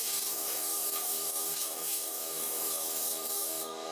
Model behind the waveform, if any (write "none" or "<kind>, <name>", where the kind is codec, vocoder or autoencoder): codec, DAC